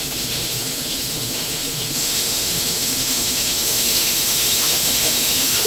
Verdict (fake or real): fake